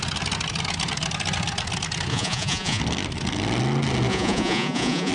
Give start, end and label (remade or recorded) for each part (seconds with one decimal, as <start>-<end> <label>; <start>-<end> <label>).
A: 0.0-2.1 recorded; 2.1-2.8 remade; 2.8-4.1 recorded; 4.1-5.1 remade